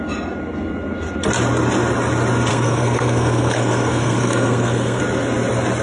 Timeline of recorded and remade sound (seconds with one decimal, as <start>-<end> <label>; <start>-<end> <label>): 0.0-2.5 recorded; 2.5-5.0 remade; 5.0-5.8 recorded